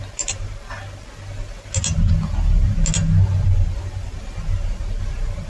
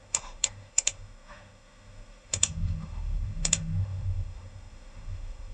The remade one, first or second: second